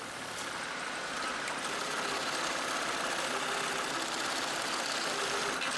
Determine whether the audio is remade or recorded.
recorded